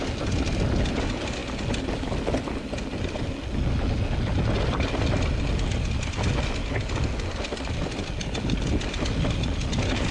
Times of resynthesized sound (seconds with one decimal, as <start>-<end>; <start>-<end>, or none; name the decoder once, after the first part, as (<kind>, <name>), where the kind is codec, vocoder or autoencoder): none